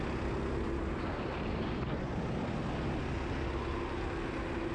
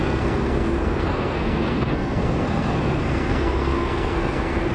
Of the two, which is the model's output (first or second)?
second